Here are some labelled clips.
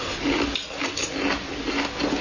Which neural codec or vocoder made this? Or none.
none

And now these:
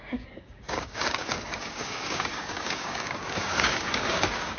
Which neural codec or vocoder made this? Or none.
codec, DAC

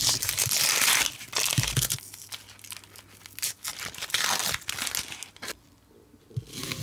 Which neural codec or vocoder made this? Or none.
none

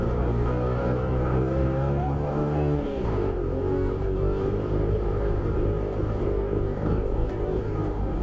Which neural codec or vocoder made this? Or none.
codec, DAC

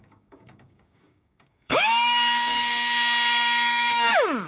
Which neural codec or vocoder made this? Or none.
codec, DAC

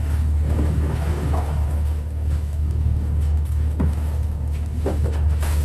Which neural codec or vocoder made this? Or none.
codec, DAC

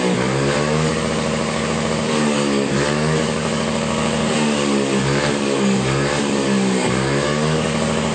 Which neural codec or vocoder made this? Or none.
codec, DAC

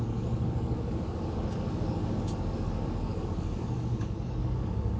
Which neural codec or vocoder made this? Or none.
codec, DAC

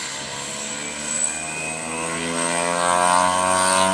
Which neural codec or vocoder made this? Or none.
none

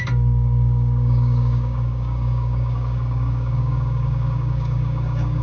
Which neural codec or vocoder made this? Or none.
codec, DAC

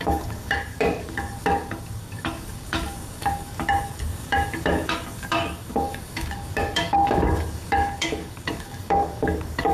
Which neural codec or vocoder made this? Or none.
codec, DAC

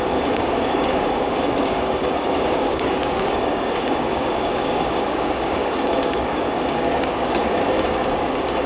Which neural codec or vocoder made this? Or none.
codec, DAC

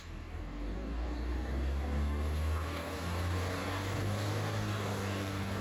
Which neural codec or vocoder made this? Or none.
codec, DAC